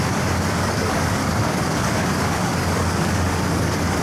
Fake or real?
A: fake